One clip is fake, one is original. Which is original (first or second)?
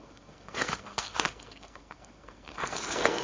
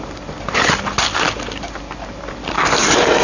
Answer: second